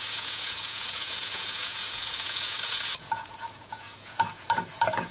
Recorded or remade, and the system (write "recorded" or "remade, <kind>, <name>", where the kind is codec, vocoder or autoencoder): remade, vocoder, Vocos